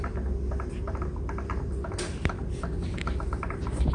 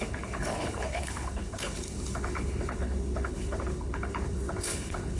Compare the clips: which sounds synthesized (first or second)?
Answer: second